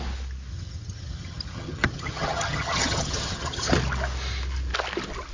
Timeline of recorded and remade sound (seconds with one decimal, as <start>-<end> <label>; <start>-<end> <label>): 0.0-0.5 recorded; 0.5-3.7 remade; 3.7-5.3 recorded